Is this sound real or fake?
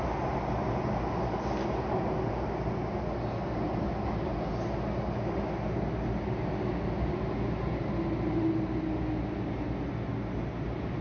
real